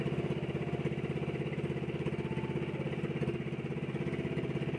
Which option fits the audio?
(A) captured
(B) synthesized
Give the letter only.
A